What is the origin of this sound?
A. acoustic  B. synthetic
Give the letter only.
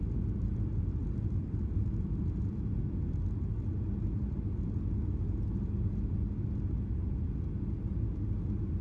A